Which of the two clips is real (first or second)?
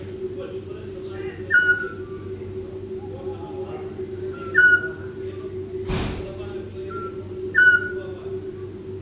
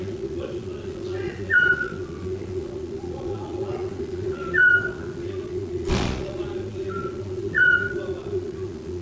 first